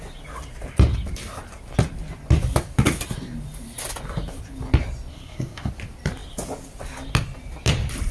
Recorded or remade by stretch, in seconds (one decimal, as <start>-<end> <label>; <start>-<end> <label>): 0.0-5.1 recorded; 5.1-5.7 remade; 5.7-8.1 recorded